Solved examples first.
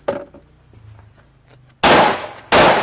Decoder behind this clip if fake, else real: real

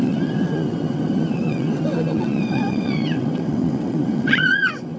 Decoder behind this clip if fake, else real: fake, vocoder, WaveNeXt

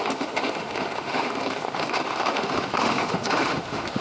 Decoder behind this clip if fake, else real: fake, autoencoder, DAC-VAE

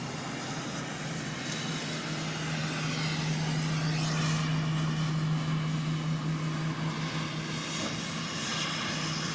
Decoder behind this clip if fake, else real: real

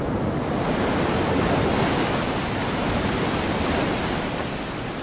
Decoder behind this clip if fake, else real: real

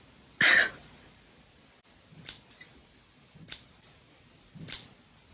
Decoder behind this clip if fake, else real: real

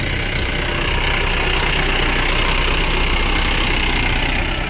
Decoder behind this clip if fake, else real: real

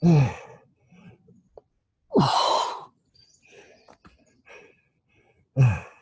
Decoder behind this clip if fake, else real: real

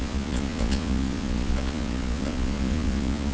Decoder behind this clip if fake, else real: fake, vocoder, Vocos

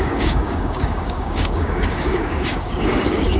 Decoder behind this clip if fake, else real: fake, codec, DAC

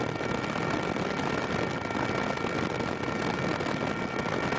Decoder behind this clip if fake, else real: real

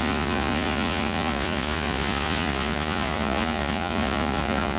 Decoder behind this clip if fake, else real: fake, vocoder, Vocos